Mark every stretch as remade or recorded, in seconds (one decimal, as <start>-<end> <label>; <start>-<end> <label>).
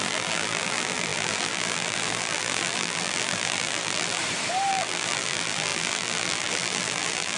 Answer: 0.0-4.2 remade; 4.2-4.7 recorded; 4.7-7.4 remade